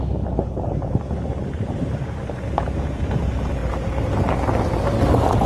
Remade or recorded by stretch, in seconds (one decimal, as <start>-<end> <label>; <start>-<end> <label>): 0.0-3.2 remade; 3.2-3.6 recorded; 3.6-4.2 remade; 4.2-5.5 recorded